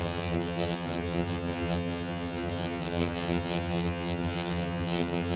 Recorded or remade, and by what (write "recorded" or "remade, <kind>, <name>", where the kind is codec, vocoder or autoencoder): remade, vocoder, HiFi-GAN